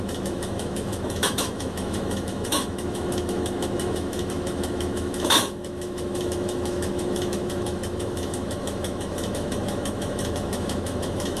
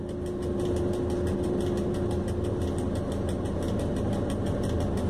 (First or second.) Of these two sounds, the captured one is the second